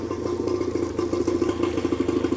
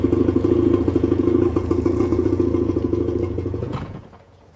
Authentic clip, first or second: first